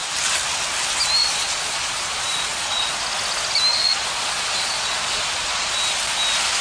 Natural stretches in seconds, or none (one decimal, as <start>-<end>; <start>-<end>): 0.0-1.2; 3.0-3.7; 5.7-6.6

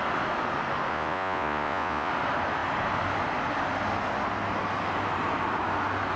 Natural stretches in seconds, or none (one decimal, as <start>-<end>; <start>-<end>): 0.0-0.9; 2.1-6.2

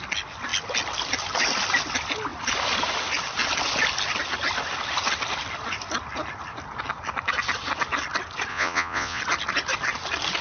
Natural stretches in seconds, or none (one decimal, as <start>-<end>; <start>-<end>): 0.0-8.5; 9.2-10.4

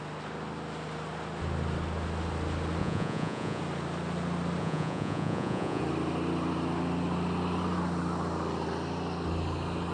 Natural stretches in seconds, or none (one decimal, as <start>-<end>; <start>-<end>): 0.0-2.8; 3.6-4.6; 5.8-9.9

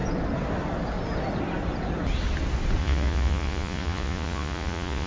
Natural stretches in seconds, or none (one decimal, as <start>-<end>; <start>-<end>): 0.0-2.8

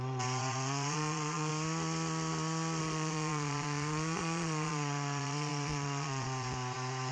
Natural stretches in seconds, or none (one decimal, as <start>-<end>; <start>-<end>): 1.5-2.8